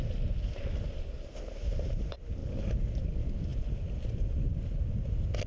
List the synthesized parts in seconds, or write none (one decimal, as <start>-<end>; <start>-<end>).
none